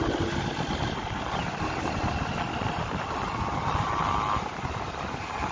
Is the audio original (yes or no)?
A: yes